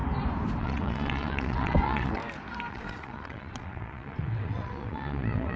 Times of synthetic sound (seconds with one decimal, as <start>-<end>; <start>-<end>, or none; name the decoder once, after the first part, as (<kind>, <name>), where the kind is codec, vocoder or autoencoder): 0.6-2.2 (vocoder, WaveNeXt); 2.7-5.6